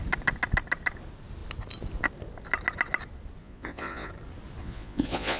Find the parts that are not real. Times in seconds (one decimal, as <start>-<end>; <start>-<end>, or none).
3.4-4.1; 4.6-5.4